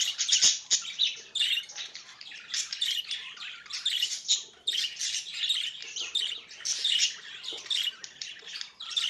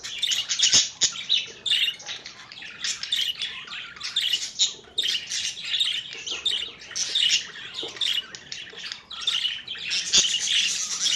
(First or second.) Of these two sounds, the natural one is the second